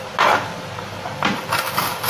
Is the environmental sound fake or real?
real